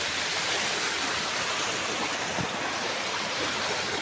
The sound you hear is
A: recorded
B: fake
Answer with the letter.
A